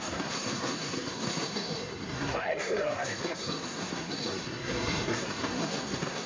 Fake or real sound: fake